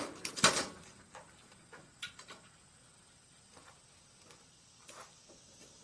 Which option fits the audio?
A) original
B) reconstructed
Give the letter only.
A